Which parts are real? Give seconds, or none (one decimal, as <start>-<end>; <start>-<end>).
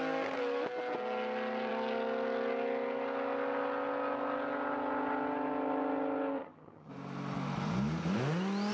0.0-6.4; 6.9-8.7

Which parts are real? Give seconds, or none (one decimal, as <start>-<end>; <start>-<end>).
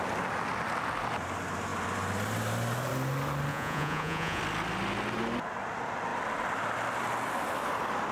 0.0-3.5; 4.4-8.1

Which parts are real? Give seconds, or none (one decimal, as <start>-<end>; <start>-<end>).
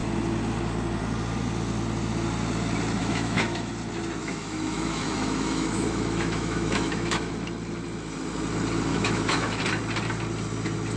0.0-3.0; 3.7-4.2; 7.3-8.9; 9.6-11.0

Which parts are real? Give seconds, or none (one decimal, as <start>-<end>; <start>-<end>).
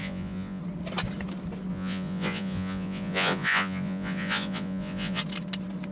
0.6-1.7; 5.2-5.9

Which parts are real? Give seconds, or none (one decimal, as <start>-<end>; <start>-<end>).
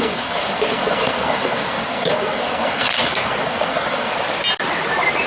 4.1-5.3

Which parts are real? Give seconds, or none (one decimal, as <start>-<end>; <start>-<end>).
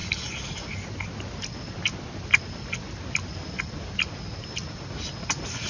0.0-5.7